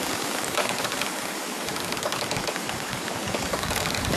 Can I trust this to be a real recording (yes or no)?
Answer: no